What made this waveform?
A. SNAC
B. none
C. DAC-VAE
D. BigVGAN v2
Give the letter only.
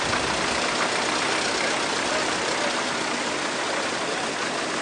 B